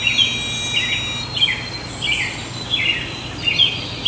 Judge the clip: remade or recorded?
recorded